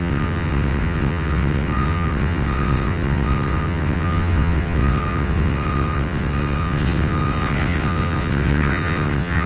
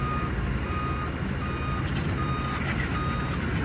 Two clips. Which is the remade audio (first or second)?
first